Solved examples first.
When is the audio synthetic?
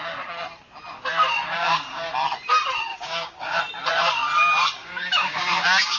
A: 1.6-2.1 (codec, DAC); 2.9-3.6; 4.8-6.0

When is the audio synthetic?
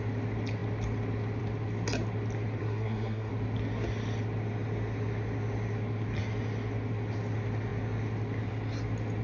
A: 2.6-3.3 (codec, SNAC)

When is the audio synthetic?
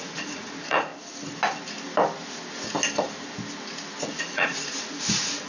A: 0.0-0.9 (vocoder, Vocos); 4.2-5.5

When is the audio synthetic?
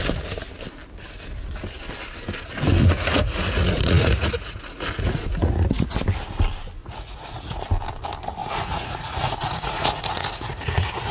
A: 2.8-5.9 (vocoder, Vocos); 6.8-7.6; 8.4-11.1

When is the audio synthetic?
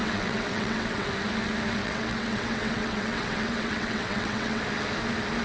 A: 0.0-1.1 (vocoder, WaveNeXt); 1.8-4.6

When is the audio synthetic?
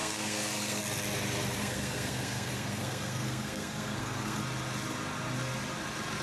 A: 0.0-0.8 (codec, SNAC); 1.6-4.4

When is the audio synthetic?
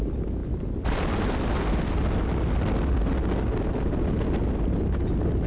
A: none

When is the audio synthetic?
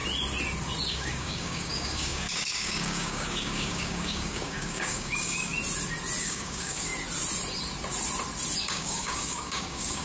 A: 0.9-5.5 (codec, DAC); 6.2-6.9; 8.6-10.0